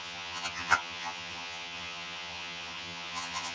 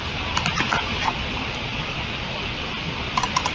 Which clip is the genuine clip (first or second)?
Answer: second